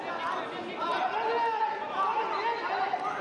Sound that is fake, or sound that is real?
real